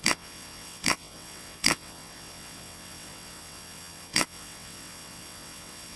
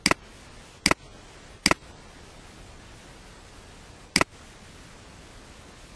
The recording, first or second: second